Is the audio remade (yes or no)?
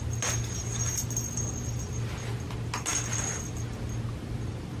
no